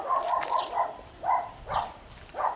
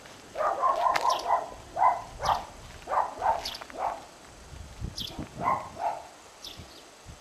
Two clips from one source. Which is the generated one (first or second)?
first